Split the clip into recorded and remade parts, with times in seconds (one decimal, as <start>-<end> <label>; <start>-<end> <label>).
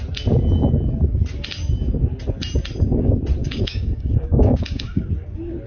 0.0-3.4 recorded; 3.4-5.1 remade; 5.1-5.7 recorded